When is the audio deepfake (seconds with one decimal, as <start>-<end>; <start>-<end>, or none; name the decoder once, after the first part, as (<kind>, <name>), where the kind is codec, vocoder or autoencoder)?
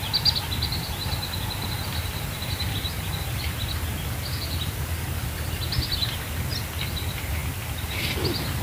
none